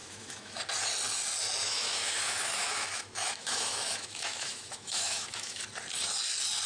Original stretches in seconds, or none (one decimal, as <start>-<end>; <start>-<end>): 0.6-1.6; 5.6-6.7